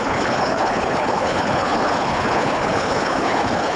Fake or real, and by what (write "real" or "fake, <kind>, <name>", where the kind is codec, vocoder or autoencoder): fake, codec, HILCodec